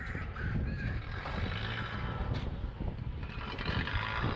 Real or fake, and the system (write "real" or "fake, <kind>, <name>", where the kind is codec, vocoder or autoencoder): real